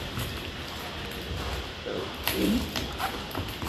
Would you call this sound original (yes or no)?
yes